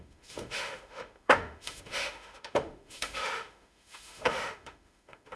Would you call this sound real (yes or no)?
no